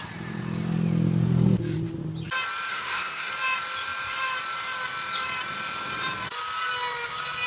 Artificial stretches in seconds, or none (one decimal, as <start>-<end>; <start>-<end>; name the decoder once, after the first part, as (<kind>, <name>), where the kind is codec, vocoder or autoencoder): 2.7-3.3 (codec, SNAC)